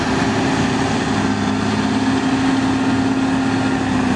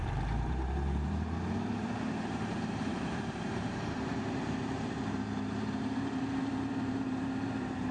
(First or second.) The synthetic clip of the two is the second